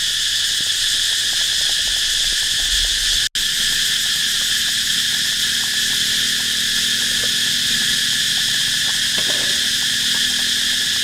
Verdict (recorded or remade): recorded